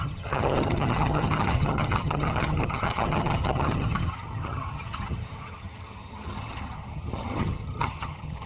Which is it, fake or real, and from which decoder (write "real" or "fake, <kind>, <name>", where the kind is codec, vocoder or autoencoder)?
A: fake, vocoder, HiFi-GAN